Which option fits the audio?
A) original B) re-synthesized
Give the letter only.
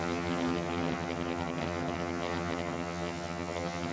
B